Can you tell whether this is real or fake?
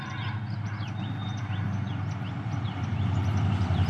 real